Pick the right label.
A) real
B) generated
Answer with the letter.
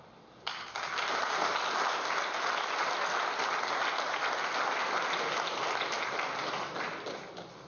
A